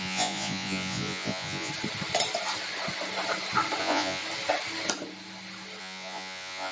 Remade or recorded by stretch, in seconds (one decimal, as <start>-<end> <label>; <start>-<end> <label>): 0.0-1.7 remade; 1.7-3.8 recorded; 3.8-4.2 remade; 4.2-5.8 recorded; 5.8-6.7 remade